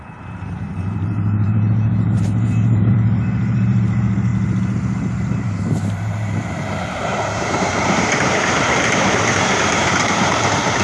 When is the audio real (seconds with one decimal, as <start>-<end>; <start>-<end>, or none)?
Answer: 4.3-5.4